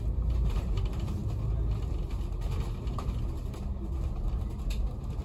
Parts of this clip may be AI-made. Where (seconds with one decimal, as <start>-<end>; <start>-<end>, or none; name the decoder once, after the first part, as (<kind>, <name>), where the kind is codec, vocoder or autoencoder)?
none